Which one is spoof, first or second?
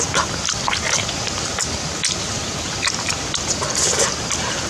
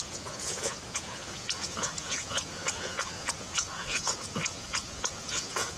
second